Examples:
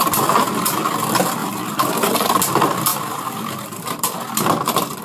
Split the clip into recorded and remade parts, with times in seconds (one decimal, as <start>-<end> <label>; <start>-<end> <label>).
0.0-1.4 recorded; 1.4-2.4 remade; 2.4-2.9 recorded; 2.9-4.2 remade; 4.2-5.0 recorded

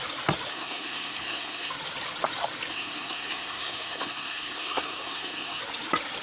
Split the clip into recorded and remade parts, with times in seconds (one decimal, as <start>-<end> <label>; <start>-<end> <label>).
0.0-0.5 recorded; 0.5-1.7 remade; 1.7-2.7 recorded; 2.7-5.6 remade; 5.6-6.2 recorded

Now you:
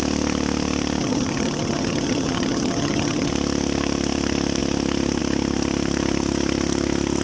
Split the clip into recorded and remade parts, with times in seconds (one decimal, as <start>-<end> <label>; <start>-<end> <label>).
0.0-1.0 recorded; 1.0-3.3 remade; 3.3-7.2 recorded

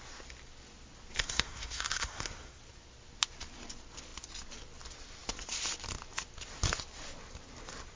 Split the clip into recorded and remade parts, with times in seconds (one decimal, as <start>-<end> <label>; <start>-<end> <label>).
0.0-1.2 recorded; 1.2-2.6 remade; 2.6-8.0 recorded

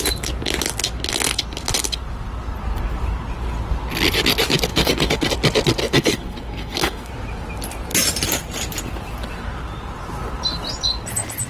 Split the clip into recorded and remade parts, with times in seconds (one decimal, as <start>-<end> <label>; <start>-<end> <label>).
0.0-4.7 recorded; 4.7-5.3 remade; 5.3-5.8 recorded; 5.8-7.1 remade; 7.1-11.5 recorded